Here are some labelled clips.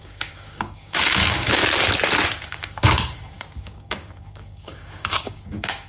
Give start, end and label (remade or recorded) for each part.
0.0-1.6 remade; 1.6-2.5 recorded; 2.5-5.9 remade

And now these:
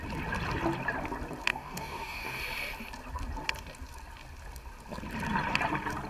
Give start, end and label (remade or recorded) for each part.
0.0-1.5 recorded; 1.5-2.4 remade; 2.4-6.1 recorded

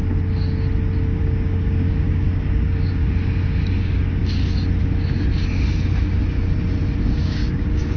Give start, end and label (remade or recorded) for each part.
0.0-1.2 recorded; 1.2-3.0 remade; 3.0-3.8 recorded; 3.8-4.2 remade; 4.2-7.2 recorded; 7.2-8.0 remade